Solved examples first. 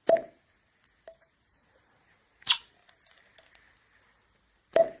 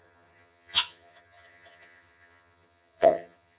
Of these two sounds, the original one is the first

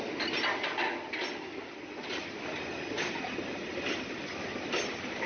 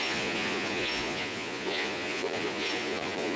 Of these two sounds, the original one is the first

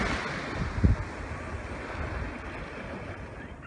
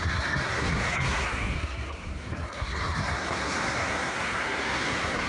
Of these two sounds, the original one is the first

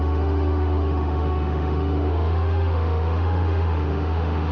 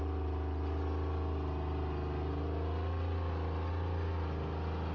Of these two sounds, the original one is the second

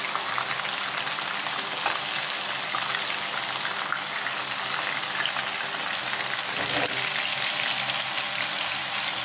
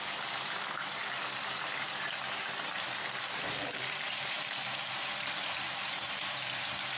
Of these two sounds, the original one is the first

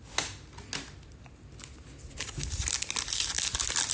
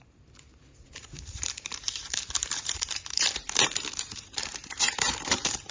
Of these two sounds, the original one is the first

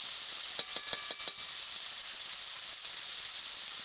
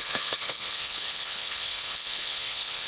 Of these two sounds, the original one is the first